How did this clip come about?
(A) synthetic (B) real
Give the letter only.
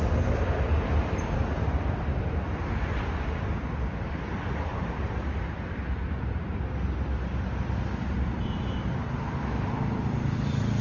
A